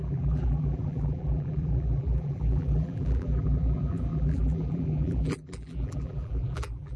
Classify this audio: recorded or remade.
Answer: remade